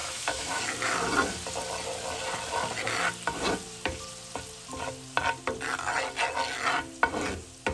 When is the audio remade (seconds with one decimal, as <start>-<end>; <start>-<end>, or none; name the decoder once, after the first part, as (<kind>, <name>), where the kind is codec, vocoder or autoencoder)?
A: 0.0-0.6 (autoencoder, DAC-VAE)